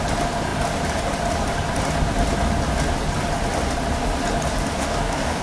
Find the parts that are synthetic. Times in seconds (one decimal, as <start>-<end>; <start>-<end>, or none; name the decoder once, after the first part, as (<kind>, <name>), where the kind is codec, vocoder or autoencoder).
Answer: 4.8-5.4 (codec, DAC)